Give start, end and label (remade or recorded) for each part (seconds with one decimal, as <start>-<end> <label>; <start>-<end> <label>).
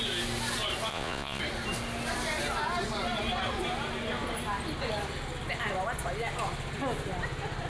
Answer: 0.0-0.9 recorded; 0.9-1.4 remade; 1.4-7.7 recorded